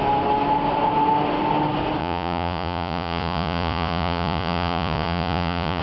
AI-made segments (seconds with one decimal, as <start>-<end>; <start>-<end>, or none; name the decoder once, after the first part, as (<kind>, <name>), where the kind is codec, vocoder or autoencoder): 2.0-5.8 (vocoder, Vocos)